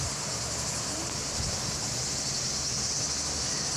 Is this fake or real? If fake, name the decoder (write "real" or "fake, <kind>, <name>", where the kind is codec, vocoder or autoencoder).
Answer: real